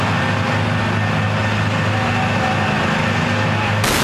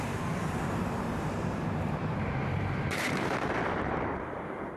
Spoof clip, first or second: second